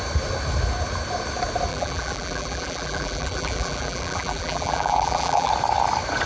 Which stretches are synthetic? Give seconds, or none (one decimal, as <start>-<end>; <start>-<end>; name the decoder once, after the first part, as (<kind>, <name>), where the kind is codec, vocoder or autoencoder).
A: 1.7-5.5 (vocoder, BigVGAN v2)